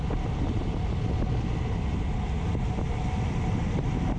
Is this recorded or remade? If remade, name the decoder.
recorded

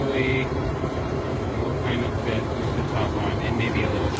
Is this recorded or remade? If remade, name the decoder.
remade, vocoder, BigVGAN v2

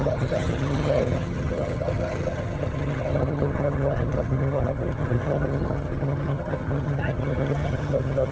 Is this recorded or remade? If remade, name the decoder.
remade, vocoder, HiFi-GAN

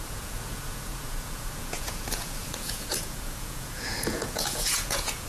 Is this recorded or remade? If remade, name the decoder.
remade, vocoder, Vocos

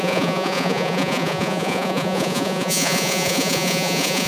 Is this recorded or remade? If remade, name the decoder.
remade, vocoder, Vocos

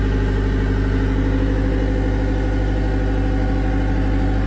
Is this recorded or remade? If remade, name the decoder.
recorded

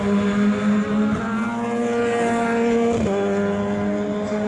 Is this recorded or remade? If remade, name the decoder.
recorded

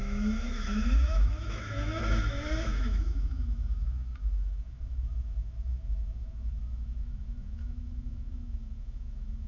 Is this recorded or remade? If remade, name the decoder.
remade, autoencoder, DAC-VAE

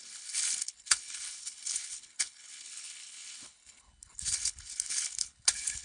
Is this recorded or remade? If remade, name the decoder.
remade, codec, HILCodec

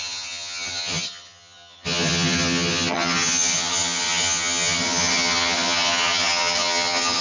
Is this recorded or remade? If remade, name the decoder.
remade, vocoder, HiFi-GAN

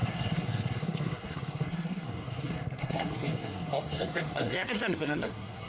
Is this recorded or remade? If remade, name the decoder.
remade, codec, SNAC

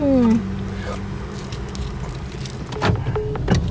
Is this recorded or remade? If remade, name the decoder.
recorded